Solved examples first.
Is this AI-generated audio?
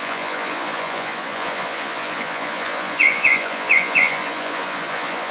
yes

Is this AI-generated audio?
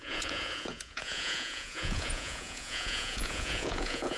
yes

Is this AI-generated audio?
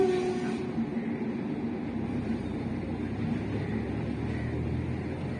no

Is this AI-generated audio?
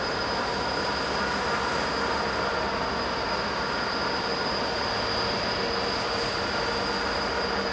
no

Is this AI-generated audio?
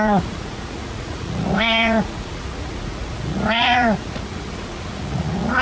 yes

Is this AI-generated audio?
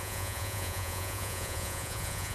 yes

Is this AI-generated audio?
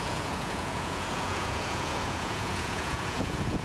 yes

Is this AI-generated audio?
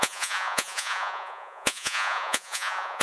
yes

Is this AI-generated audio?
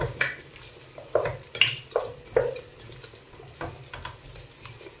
no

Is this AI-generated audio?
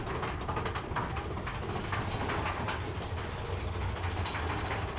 no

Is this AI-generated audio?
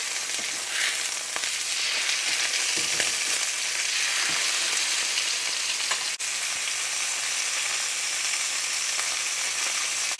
no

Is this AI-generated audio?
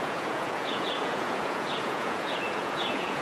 yes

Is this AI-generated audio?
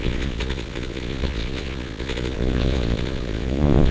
yes